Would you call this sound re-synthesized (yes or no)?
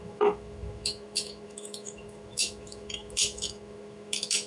yes